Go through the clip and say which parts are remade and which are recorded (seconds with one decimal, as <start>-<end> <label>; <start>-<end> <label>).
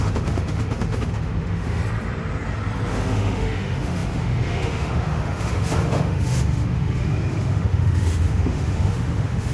0.0-1.8 remade; 1.8-2.9 recorded; 2.9-9.5 remade